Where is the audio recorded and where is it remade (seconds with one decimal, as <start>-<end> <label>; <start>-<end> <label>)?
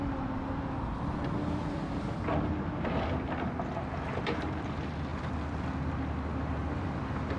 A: 0.0-7.4 recorded